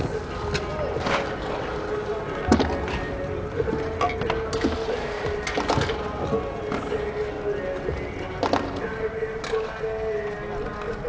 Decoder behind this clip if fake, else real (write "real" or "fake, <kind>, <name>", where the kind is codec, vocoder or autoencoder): real